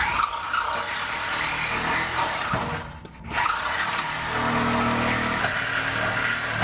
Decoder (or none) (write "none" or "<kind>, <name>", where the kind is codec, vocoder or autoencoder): none